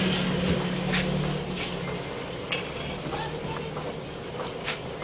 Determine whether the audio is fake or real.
real